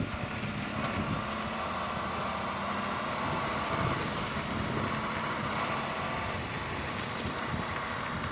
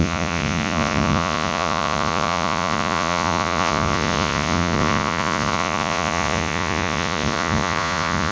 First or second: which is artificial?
second